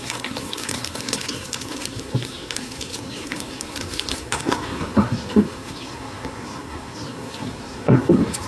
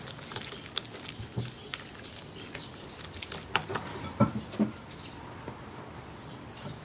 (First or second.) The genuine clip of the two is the second